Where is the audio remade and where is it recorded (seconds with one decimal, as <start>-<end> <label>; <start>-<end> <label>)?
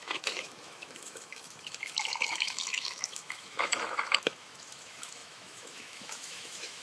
0.0-6.8 remade